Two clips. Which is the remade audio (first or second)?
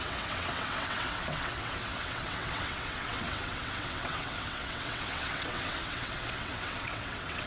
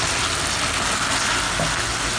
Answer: first